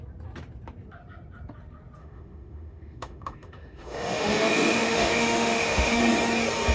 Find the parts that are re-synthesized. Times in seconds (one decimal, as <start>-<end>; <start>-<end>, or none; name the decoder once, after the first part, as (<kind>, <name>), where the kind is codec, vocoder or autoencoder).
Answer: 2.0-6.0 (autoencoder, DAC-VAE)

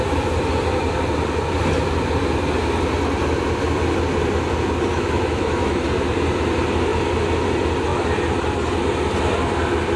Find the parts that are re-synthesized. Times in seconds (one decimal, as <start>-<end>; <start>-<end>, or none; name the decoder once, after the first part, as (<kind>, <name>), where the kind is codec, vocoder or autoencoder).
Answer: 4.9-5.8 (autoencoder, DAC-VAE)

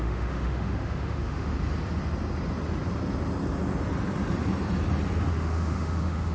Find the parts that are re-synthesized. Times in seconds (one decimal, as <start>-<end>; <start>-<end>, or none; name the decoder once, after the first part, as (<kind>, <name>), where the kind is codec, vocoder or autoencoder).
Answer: 0.0-1.5 (autoencoder, DAC-VAE); 5.3-6.3

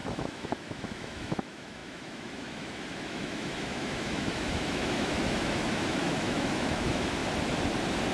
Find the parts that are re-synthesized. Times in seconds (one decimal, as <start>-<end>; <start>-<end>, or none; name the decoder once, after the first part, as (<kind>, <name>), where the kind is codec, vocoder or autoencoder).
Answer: 0.0-7.2 (autoencoder, DAC-VAE)